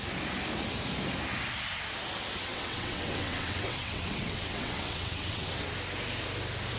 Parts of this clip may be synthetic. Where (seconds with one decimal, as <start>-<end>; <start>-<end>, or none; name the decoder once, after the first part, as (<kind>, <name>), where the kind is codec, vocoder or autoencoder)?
2.5-5.7 (vocoder, WaveNeXt)